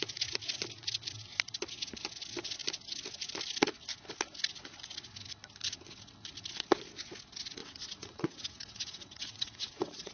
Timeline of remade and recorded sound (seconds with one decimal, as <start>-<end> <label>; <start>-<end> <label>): 0.0-7.6 recorded; 7.6-10.1 remade